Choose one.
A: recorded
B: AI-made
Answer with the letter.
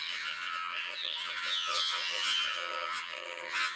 B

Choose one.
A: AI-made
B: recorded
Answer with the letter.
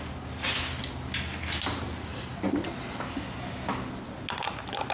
B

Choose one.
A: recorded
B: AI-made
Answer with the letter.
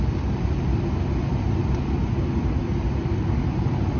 A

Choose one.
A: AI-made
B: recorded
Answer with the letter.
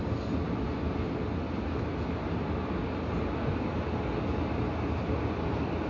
B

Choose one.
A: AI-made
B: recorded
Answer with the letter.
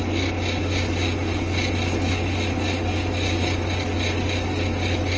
B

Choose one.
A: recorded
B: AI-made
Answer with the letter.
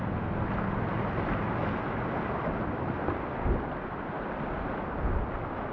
A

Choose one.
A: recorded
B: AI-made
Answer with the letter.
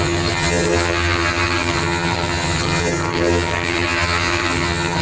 B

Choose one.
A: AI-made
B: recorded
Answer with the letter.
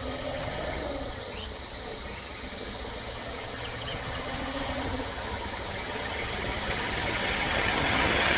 A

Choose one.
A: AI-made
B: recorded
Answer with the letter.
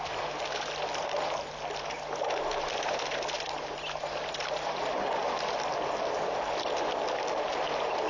B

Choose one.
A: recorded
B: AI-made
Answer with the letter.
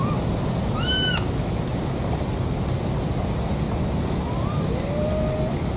A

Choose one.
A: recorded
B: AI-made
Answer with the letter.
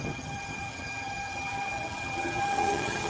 B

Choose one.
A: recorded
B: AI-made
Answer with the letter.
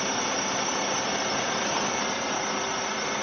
A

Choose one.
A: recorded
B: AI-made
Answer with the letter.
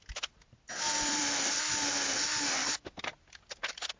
A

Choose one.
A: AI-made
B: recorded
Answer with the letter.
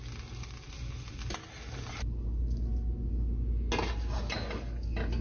B